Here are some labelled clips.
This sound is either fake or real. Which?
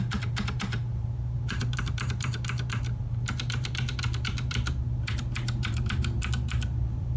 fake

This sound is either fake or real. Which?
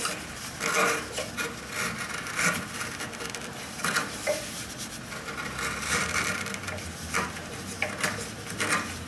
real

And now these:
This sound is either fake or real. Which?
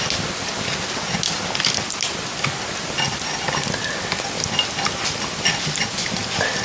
real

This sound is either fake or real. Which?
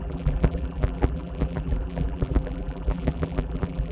fake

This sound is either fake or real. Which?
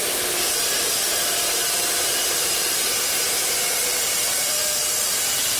fake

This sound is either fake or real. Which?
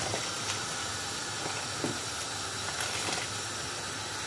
real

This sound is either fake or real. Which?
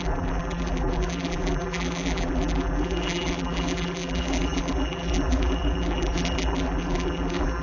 fake